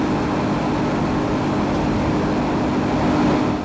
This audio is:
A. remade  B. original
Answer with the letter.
B